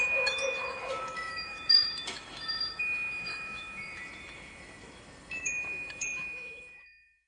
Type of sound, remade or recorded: remade